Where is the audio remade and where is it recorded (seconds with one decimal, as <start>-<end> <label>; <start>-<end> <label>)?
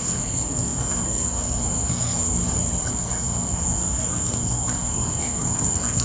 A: 0.0-2.4 remade; 2.4-2.9 recorded; 2.9-6.0 remade